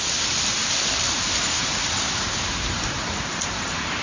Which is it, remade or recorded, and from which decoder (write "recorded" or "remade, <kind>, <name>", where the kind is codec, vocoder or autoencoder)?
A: remade, vocoder, BigVGAN v2